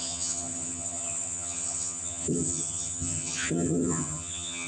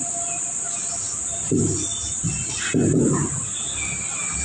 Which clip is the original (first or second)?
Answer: second